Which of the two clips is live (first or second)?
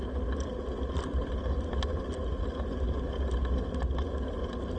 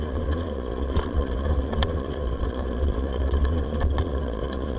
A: first